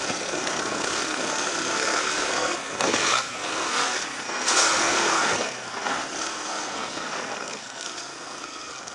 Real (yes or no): no